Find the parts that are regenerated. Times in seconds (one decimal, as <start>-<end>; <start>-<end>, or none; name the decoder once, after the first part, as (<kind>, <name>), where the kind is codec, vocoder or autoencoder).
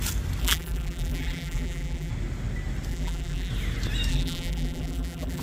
0.4-2.1 (vocoder, BigVGAN v2); 2.9-3.5; 4.1-5.4